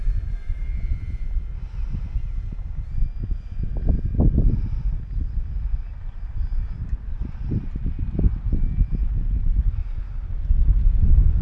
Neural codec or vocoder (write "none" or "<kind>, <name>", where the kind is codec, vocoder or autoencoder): none